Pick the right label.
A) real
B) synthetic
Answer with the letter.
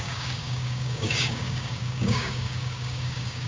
B